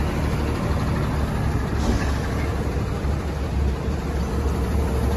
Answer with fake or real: real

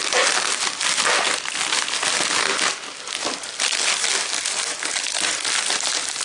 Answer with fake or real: real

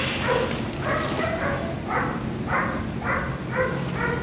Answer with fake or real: real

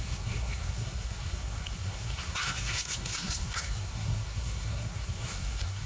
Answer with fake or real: fake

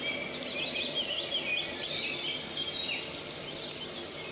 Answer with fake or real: real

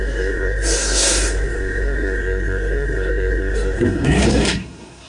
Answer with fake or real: fake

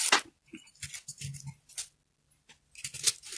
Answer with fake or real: real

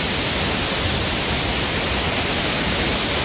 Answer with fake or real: real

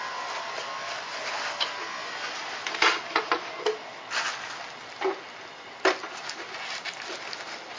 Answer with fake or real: real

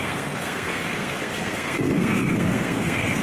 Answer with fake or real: fake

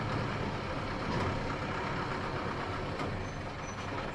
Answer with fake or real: real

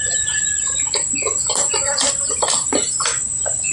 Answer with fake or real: real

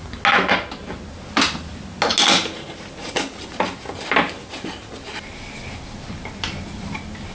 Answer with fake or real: real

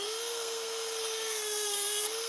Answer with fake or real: fake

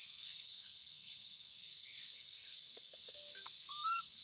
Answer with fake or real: fake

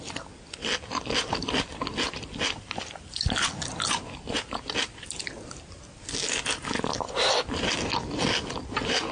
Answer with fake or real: real